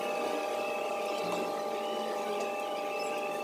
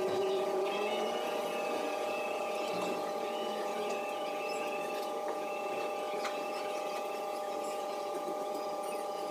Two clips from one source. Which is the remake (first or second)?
second